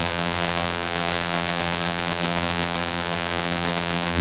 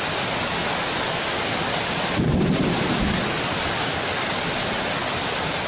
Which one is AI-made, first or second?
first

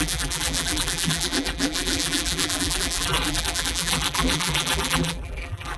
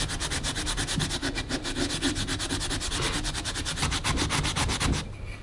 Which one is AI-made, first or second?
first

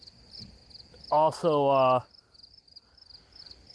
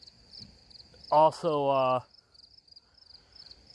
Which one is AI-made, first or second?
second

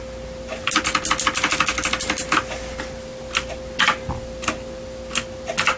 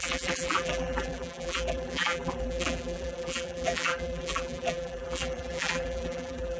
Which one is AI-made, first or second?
second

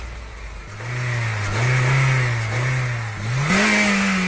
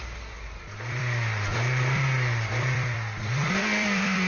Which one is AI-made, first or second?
second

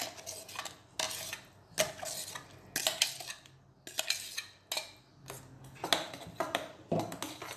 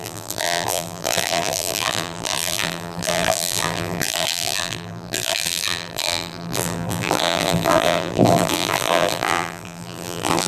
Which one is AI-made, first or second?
second